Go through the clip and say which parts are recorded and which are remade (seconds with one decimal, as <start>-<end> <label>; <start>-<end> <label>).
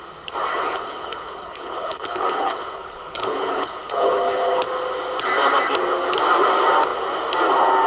0.0-0.5 recorded; 0.5-4.6 remade; 4.6-7.9 recorded